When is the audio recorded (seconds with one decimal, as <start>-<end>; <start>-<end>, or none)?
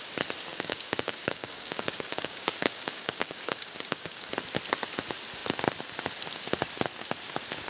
0.0-0.5; 4.3-7.7